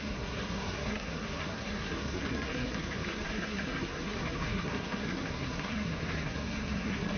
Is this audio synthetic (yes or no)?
yes